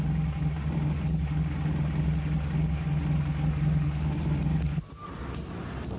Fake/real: real